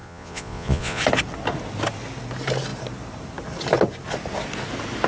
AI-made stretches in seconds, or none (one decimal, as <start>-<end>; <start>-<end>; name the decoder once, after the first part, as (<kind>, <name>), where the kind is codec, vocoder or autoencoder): 0.0-1.0 (vocoder, Vocos)